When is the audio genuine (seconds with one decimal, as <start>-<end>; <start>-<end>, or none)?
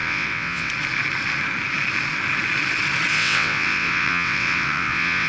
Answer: 0.7-3.1